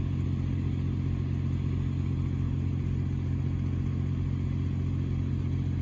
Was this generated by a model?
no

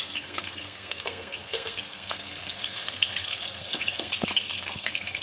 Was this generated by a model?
yes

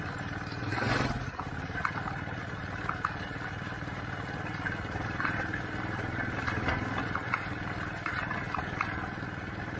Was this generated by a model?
no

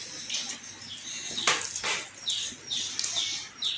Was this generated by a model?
no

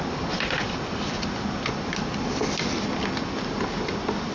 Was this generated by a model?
no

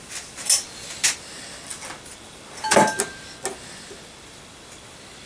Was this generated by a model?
no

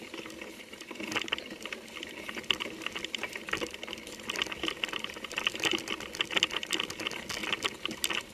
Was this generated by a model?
no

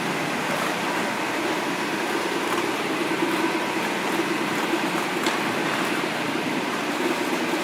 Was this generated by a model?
no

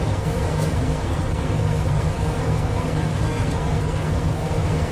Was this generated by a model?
yes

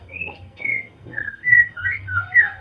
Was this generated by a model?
yes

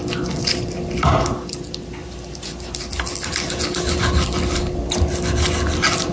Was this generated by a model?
no